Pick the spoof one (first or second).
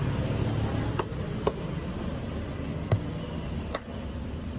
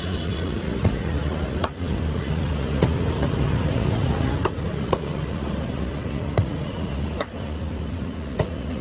second